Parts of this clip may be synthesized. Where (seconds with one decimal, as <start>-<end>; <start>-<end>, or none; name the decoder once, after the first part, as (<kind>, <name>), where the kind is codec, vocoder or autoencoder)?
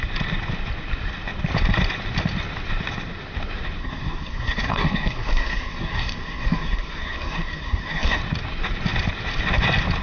3.8-8.2 (codec, SNAC)